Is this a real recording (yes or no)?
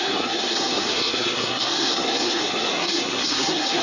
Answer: no